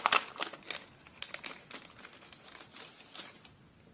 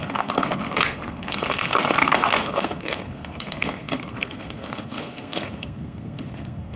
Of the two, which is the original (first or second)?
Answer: first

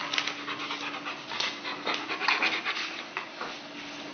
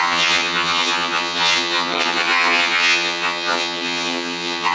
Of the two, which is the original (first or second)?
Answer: first